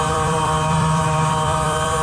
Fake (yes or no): yes